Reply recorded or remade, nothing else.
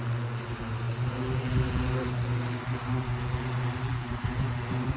recorded